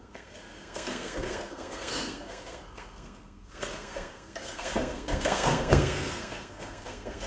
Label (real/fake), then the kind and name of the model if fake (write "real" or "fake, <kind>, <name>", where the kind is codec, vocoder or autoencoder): fake, codec, SNAC